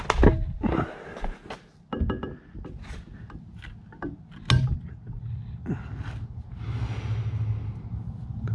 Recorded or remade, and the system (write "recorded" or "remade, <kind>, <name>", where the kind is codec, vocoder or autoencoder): recorded